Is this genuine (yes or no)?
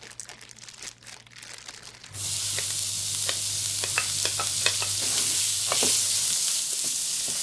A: yes